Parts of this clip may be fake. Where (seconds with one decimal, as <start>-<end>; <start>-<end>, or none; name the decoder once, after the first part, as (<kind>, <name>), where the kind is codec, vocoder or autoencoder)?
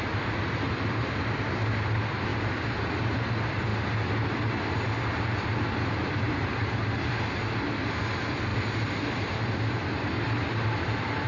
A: 0.0-3.7 (vocoder, BigVGAN v2); 6.1-11.3